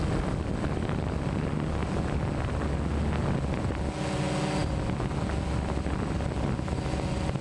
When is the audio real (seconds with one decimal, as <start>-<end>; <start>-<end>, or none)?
0.0-7.4